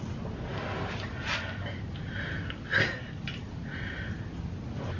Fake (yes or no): no